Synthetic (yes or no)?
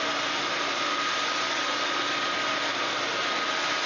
no